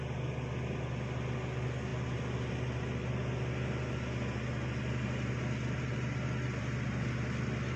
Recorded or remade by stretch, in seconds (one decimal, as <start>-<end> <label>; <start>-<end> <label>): 0.0-7.8 recorded